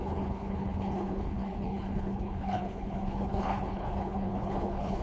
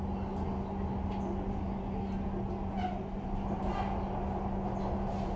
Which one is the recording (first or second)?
second